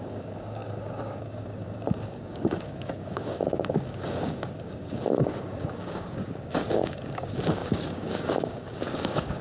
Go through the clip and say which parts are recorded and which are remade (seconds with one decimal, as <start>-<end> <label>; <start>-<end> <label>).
0.0-9.4 remade